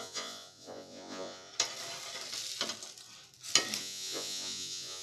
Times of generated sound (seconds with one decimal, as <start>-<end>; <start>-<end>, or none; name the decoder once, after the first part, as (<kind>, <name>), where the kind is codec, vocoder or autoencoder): 0.0-1.5 (vocoder, Vocos); 3.8-5.0